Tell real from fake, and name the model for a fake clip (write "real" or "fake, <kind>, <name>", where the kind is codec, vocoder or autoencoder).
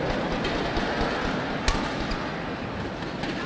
real